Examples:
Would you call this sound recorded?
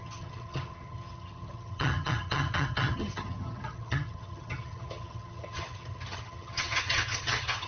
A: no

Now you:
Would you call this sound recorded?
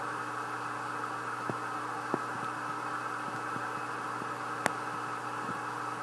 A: yes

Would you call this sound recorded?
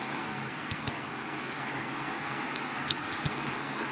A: no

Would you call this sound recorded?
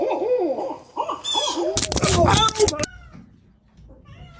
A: yes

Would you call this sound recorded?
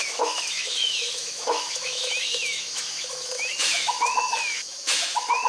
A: no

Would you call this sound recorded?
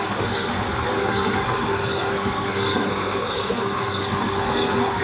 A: no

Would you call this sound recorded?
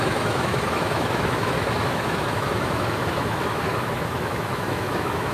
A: no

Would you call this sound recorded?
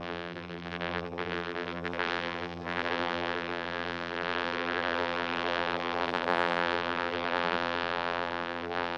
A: no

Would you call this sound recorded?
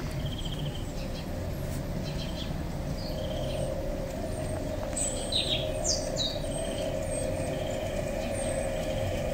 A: yes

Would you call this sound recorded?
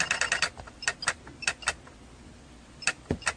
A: yes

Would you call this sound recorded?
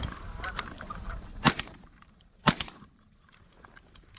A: no